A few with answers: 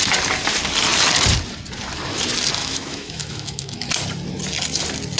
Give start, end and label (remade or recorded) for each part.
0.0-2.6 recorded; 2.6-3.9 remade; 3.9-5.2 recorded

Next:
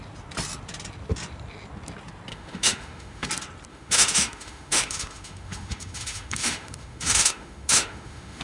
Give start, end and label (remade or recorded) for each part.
0.0-2.3 recorded; 2.3-3.3 remade; 3.3-3.7 recorded; 3.7-8.4 remade

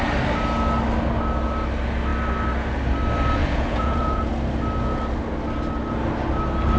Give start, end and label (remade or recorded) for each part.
0.0-3.4 recorded; 3.4-4.3 remade; 4.3-6.8 recorded